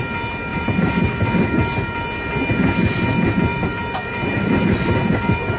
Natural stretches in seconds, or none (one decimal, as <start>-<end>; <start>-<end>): 0.0-0.5; 1.3-3.5